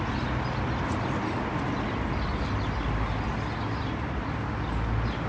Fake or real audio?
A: real